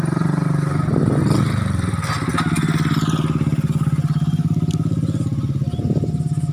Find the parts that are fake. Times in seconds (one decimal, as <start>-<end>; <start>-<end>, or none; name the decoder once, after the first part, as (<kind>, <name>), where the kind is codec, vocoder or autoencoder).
none